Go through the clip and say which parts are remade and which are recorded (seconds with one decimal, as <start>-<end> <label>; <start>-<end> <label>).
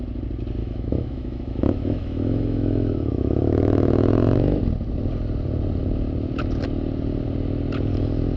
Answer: 0.0-0.6 recorded; 0.6-4.6 remade; 4.6-8.4 recorded